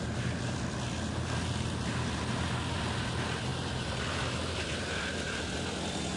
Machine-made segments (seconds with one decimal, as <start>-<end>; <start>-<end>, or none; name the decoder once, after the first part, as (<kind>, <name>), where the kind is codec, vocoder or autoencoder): none